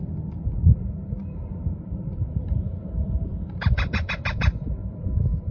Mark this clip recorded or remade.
remade